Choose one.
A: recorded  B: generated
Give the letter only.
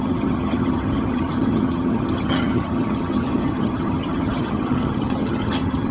B